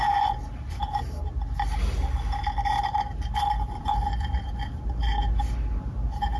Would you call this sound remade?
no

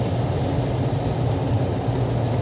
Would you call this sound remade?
no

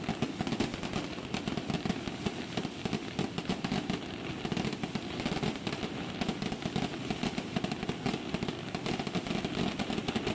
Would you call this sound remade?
no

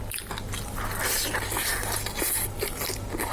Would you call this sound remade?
no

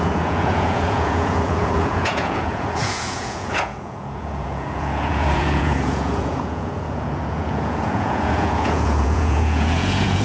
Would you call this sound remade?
yes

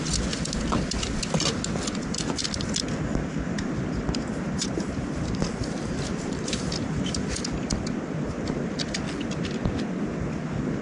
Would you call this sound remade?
no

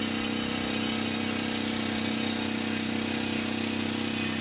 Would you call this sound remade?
no